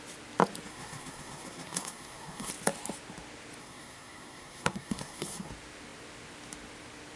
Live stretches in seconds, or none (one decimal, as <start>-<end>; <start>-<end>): 0.0-0.7; 2.5-3.6; 5.5-7.2